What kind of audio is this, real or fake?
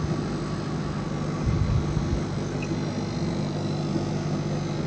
real